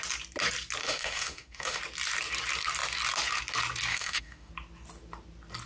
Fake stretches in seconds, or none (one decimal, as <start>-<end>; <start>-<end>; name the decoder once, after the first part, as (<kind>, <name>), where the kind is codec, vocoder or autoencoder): 0.8-1.8 (autoencoder, DAC-VAE); 3.9-4.5